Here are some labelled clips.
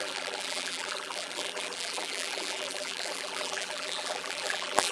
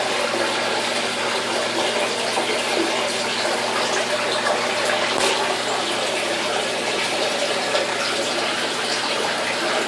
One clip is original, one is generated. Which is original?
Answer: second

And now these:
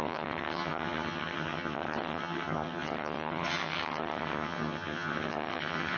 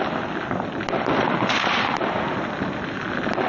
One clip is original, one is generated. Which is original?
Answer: second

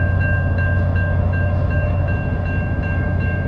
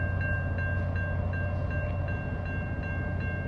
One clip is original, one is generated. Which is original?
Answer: second